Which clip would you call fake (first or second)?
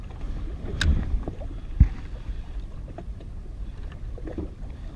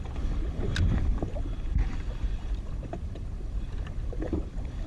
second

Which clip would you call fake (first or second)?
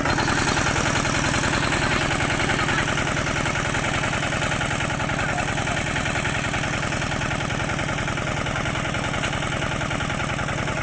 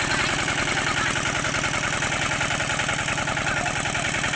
second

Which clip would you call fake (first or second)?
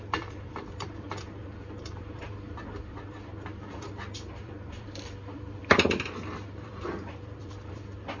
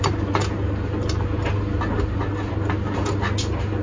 first